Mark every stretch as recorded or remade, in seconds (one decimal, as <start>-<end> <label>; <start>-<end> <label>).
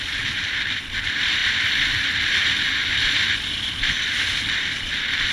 0.0-4.3 remade; 4.3-4.8 recorded; 4.8-5.3 remade